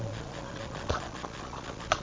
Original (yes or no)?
no